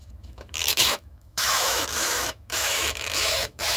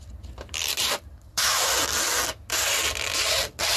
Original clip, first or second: second